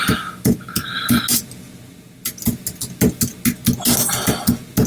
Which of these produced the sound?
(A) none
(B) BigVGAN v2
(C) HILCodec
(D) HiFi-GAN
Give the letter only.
A